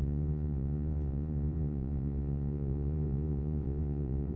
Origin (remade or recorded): remade